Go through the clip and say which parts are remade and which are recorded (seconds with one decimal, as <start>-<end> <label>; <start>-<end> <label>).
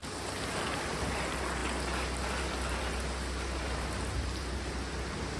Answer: 0.0-5.4 recorded